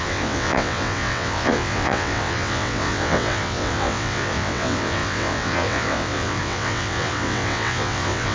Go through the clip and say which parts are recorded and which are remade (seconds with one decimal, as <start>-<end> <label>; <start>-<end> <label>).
0.0-8.3 remade